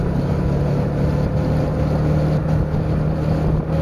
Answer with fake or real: real